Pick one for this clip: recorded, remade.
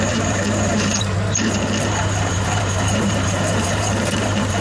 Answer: remade